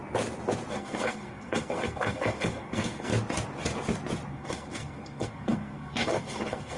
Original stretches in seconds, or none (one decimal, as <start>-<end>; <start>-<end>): 0.0-0.7; 3.1-4.3